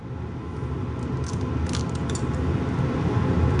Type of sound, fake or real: real